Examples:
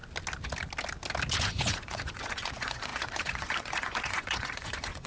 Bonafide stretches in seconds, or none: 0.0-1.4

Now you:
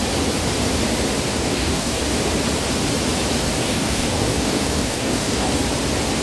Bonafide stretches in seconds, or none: 0.0-1.3; 2.0-3.6; 5.6-6.2

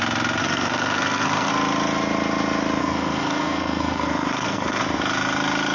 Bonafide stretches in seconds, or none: 0.0-0.4; 1.5-2.8; 4.8-5.7

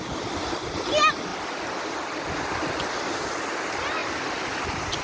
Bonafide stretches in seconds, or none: 0.0-5.0

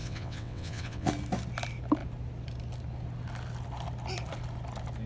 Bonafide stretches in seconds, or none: 1.1-5.1

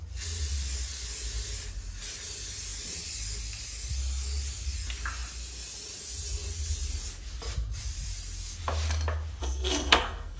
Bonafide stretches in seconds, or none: 0.0-9.4

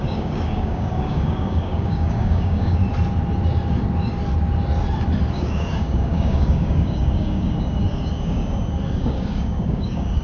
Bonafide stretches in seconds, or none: 2.8-5.3; 8.4-8.9